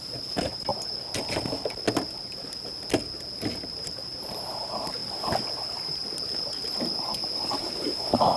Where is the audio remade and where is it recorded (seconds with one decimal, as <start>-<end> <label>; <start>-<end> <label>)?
0.0-0.7 remade; 0.7-3.7 recorded; 3.7-5.0 remade; 5.0-5.6 recorded; 5.6-6.0 remade; 6.0-7.5 recorded; 7.5-8.4 remade